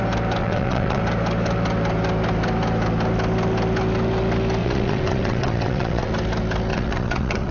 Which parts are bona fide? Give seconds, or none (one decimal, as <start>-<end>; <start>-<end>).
0.0-0.4; 1.0-4.6; 6.1-6.7